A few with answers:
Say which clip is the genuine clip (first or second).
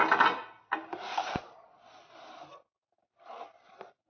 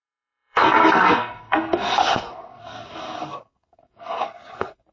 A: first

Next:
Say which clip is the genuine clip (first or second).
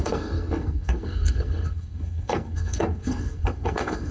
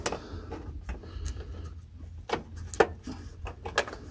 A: second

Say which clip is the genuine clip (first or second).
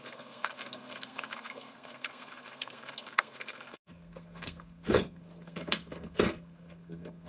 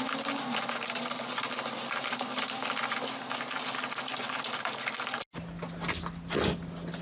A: second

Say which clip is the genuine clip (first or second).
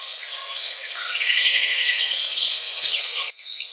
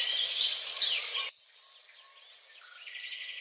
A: second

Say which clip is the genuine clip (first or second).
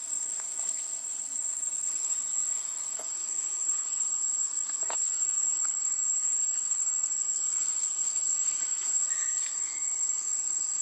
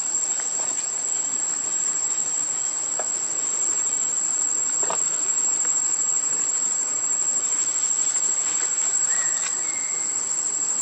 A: second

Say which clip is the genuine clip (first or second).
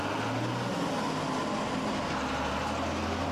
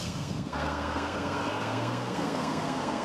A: first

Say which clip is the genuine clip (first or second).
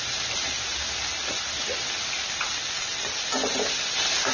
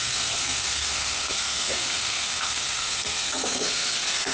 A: first